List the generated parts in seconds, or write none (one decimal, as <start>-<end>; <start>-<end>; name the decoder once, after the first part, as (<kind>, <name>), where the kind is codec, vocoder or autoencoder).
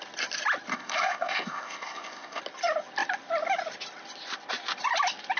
0.7-2.4 (codec, ZipCodec)